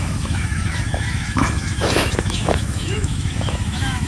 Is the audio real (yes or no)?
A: no